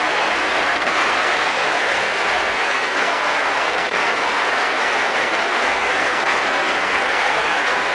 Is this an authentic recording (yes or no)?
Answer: no